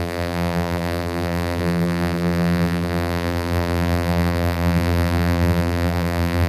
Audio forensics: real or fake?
fake